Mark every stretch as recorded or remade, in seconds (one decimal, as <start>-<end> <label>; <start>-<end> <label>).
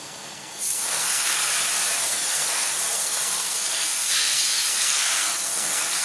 0.0-1.5 remade; 1.5-2.0 recorded; 2.0-6.0 remade